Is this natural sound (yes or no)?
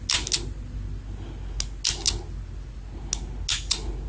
yes